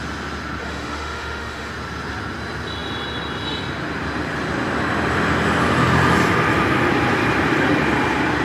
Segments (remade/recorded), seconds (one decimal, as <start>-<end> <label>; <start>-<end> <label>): 0.0-0.6 recorded; 0.6-1.7 remade; 1.7-8.4 recorded